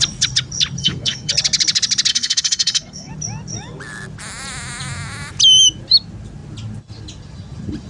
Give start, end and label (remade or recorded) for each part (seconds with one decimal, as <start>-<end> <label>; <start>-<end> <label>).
0.0-0.8 recorded; 0.8-1.3 remade; 1.3-2.1 recorded; 2.1-3.1 remade; 3.1-7.9 recorded